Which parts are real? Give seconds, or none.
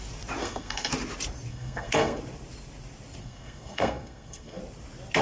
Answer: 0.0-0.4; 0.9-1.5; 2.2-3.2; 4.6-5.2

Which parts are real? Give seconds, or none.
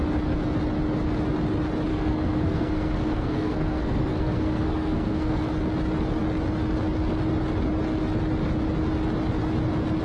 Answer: 0.0-1.9; 5.4-10.0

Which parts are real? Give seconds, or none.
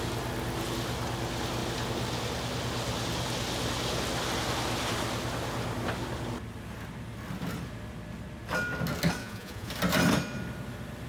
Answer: 0.0-9.2; 9.7-11.1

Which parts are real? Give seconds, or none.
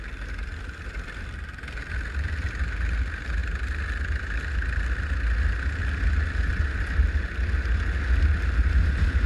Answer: 0.0-9.3